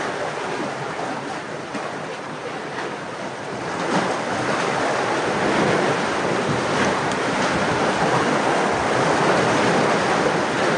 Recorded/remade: recorded